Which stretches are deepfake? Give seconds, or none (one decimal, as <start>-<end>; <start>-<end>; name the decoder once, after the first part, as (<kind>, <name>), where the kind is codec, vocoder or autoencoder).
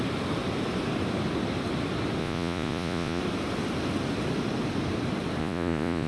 2.2-3.2 (vocoder, Vocos); 5.4-6.1